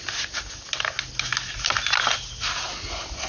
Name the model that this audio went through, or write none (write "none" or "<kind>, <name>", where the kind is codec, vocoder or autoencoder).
none